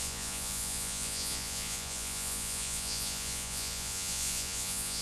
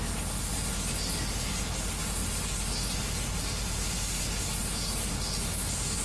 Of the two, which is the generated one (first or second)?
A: first